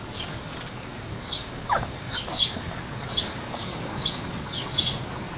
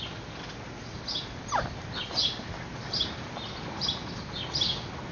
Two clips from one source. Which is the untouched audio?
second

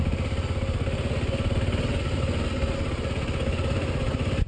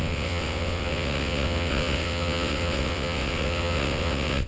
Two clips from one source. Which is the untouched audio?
first